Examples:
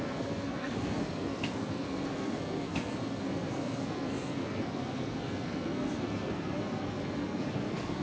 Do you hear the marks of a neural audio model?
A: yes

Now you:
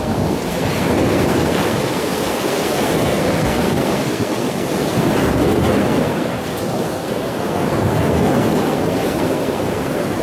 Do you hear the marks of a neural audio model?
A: yes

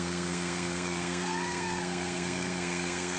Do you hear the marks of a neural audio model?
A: yes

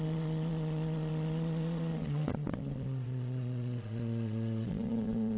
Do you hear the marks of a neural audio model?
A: yes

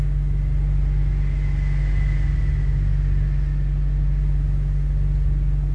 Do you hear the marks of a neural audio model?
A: no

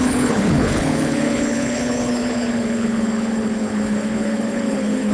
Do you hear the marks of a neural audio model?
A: yes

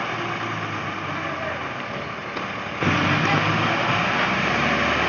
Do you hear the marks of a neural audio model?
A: no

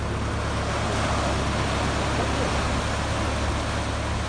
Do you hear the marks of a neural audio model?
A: no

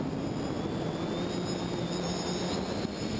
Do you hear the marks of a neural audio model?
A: no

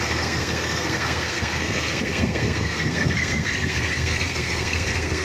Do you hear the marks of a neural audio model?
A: yes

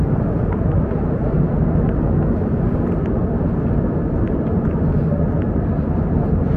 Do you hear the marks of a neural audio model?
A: no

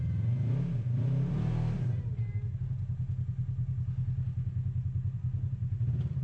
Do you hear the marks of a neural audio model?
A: no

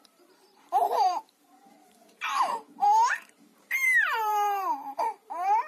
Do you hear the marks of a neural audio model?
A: yes